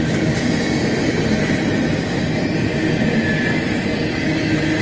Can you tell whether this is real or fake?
real